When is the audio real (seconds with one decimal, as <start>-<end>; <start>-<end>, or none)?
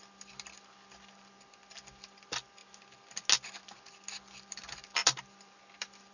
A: 2.6-3.6